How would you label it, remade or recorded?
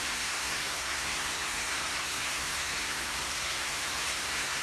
remade